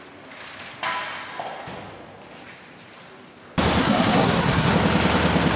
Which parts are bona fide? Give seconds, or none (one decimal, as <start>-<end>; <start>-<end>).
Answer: 0.0-3.8; 4.7-5.6